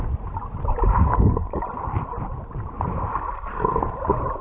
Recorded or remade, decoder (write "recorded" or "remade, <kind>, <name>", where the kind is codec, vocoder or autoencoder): recorded